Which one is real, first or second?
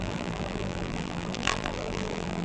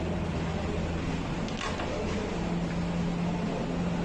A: second